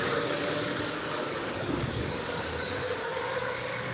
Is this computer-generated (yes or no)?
yes